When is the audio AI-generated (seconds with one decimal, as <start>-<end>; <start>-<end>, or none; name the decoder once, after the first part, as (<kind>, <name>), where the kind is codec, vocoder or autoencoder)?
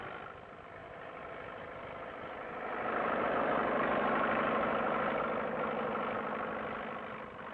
0.8-5.2 (vocoder, BigVGAN v2)